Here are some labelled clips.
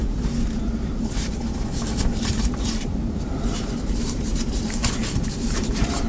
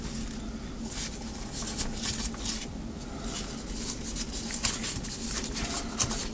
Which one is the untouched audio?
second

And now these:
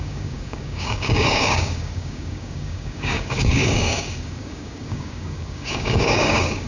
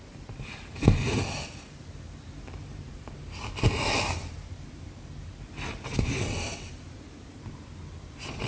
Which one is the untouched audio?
second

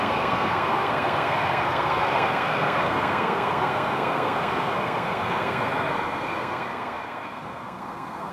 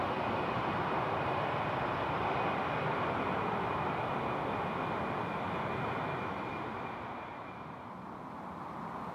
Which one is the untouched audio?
second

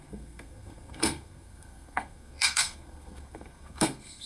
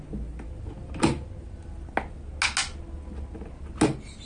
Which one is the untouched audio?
second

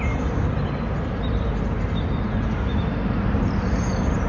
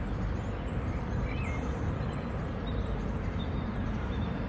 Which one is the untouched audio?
first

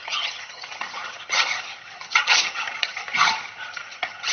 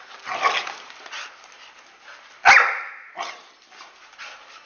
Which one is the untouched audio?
second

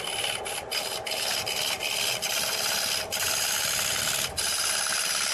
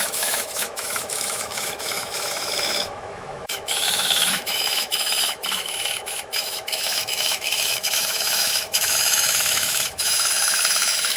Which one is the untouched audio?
first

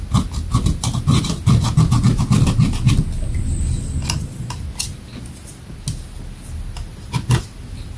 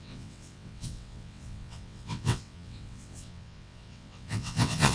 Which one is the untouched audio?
first